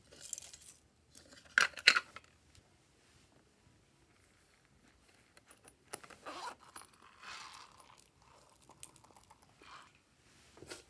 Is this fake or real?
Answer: real